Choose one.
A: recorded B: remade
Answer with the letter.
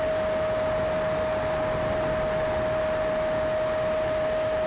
A